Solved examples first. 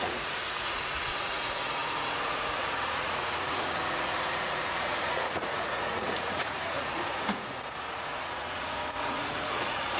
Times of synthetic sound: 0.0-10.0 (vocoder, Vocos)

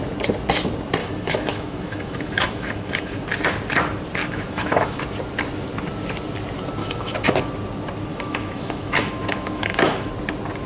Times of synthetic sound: 1.0-3.2 (autoencoder, DAC-VAE); 4.2-5.0; 6.8-7.3; 8.1-10.1

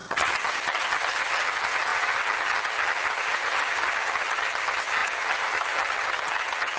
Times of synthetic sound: 0.0-6.8 (vocoder, HiFi-GAN)

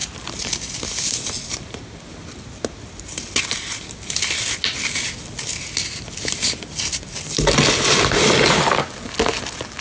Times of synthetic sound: none